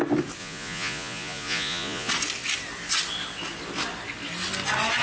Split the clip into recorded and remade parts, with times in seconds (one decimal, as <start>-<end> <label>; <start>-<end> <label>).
0.0-0.4 recorded; 0.4-2.1 remade; 2.1-5.0 recorded